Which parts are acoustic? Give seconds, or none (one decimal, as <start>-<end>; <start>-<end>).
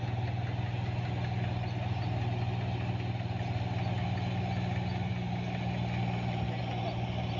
0.0-7.4